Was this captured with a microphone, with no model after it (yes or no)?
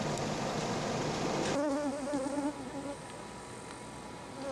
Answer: yes